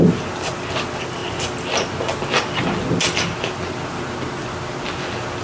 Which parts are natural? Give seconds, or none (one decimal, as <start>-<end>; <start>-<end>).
0.0-5.4